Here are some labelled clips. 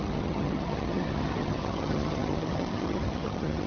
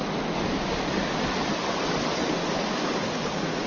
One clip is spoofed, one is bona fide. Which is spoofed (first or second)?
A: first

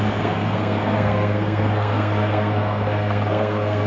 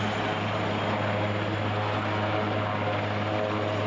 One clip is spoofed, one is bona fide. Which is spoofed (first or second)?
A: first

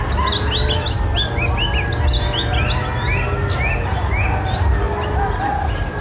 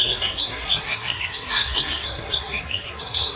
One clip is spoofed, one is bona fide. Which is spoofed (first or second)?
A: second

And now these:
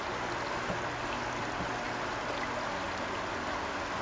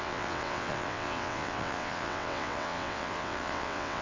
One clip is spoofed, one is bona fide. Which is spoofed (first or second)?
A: second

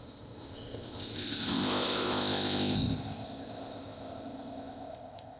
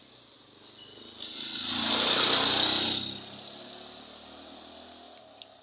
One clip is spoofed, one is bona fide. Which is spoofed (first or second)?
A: first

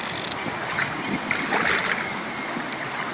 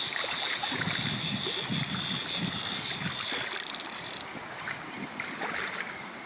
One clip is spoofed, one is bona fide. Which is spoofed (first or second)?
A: second